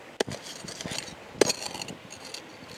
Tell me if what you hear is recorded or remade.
recorded